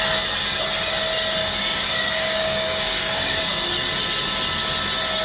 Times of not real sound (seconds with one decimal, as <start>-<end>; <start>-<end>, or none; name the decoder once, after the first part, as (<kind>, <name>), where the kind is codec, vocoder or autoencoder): 1.4-3.4 (codec, DAC)